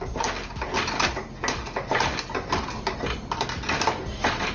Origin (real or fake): real